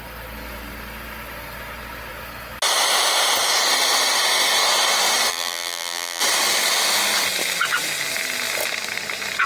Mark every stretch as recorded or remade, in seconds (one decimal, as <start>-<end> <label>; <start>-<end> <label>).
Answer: 0.0-5.3 recorded; 5.3-6.2 remade; 6.2-9.5 recorded